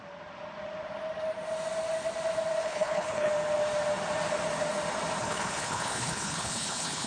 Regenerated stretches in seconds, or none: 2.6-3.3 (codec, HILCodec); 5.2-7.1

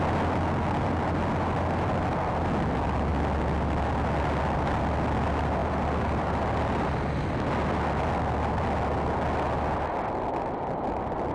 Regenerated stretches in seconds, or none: 5.6-6.7 (vocoder, BigVGAN v2)

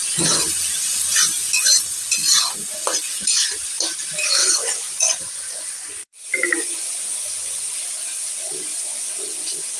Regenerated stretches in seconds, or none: 4.4-7.7 (vocoder, Vocos); 8.7-9.8

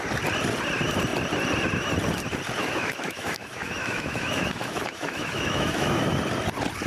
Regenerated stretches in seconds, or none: 2.6-6.2 (autoencoder, DAC-VAE)

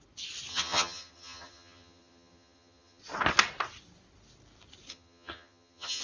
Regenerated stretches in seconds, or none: 0.5-3.0 (vocoder, HiFi-GAN); 4.9-6.0

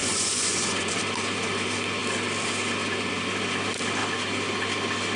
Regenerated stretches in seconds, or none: 0.0-1.0 (vocoder, Vocos)